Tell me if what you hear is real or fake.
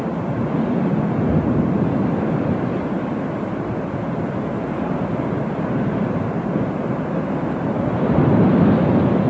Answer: real